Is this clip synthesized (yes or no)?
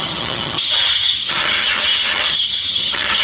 yes